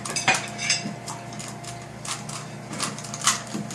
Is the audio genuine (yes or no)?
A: no